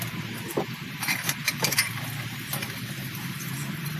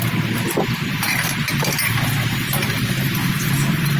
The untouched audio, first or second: second